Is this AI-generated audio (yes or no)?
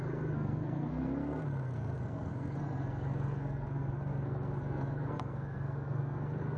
yes